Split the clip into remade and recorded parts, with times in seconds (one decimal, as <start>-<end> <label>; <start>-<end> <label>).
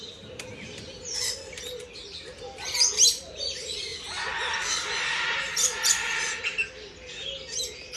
0.0-8.0 recorded